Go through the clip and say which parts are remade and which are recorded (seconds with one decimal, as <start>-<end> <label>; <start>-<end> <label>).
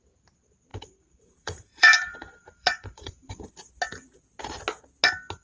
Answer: 0.0-0.7 recorded; 0.7-3.5 remade; 3.5-5.4 recorded